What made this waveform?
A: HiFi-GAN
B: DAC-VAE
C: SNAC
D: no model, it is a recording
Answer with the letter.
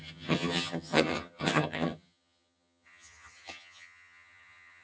A